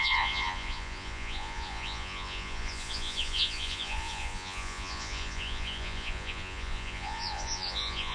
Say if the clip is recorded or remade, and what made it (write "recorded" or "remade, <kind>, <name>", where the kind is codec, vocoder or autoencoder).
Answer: remade, vocoder, Vocos